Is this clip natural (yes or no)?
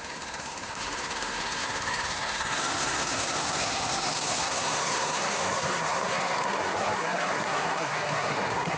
no